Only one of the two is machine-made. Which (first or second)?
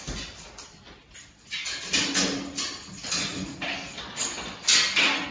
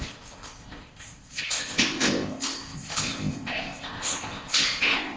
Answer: second